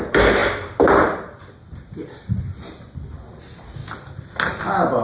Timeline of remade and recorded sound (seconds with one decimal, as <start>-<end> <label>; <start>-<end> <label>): 0.0-5.0 recorded